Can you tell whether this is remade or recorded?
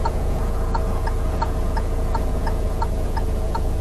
remade